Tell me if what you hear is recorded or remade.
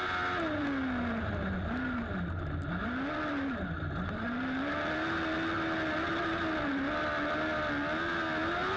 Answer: recorded